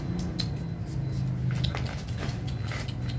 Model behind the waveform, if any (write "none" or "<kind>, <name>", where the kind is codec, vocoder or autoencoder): none